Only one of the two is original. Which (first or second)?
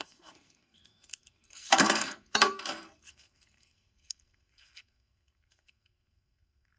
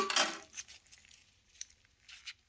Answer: second